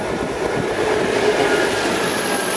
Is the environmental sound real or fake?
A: real